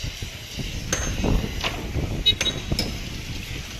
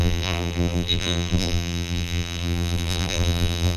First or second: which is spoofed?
second